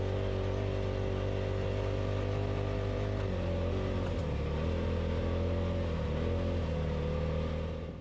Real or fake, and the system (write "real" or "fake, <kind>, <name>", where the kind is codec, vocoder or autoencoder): real